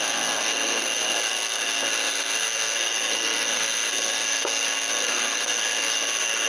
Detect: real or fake fake